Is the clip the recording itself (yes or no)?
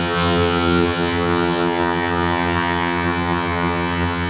no